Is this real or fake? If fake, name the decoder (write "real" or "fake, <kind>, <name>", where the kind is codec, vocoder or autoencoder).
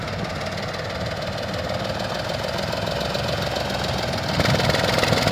real